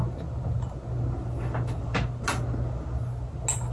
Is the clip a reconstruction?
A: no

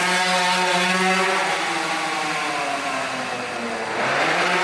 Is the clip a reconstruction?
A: no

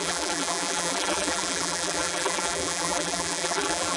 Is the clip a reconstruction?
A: yes